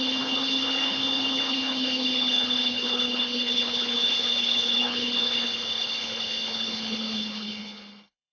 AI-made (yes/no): yes